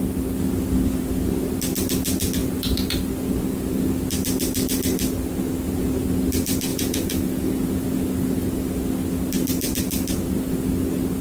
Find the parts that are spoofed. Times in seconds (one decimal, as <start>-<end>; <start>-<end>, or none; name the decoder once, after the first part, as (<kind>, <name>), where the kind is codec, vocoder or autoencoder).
6.7-8.4 (vocoder, Vocos)